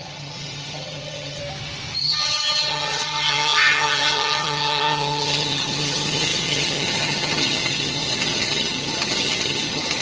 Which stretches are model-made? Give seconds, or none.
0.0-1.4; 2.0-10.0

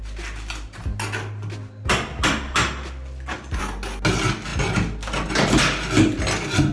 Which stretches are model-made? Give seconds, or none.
none